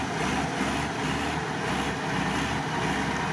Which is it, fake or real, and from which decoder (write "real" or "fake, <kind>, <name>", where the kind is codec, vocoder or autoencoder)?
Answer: real